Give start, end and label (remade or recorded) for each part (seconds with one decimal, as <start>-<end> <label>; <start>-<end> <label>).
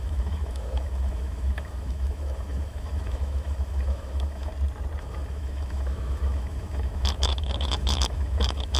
0.0-4.5 remade; 4.5-5.0 recorded; 5.0-8.8 remade